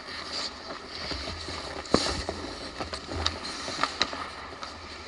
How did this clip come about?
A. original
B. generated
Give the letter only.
A